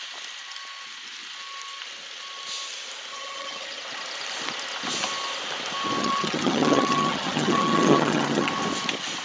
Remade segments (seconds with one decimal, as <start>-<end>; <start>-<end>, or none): 3.1-3.8; 6.0-8.5